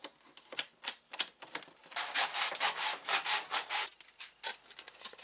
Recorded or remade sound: recorded